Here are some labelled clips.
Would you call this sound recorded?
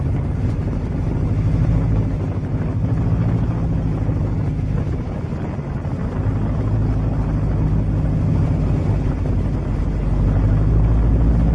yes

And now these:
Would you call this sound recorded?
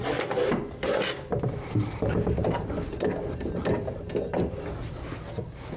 yes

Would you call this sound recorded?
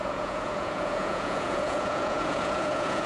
no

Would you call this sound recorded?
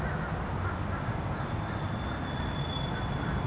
yes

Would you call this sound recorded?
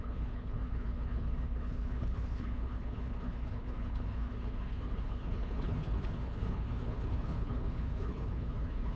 no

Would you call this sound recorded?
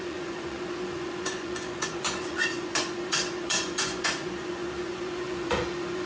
no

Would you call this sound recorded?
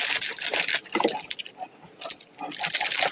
yes